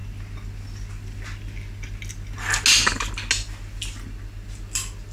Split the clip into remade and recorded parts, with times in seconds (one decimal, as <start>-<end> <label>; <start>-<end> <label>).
0.0-5.1 recorded